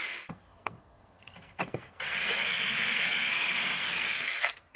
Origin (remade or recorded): remade